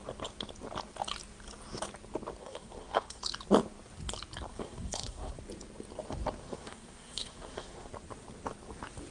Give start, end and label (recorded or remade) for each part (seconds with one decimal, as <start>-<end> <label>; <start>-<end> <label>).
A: 0.0-2.4 recorded; 2.4-3.2 remade; 3.2-4.5 recorded; 4.5-5.3 remade; 5.3-6.4 recorded; 6.4-7.9 remade; 7.9-9.1 recorded